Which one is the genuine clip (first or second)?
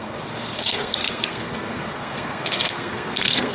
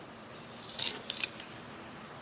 second